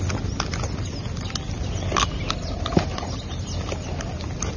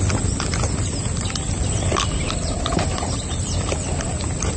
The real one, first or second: first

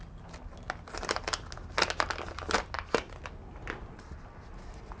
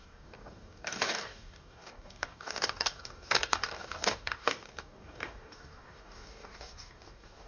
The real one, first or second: first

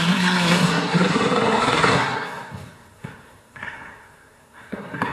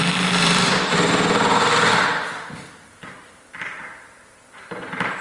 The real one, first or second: second